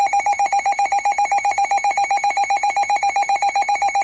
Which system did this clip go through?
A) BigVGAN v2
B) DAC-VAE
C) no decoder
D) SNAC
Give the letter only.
A